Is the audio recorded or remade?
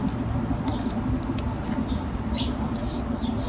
recorded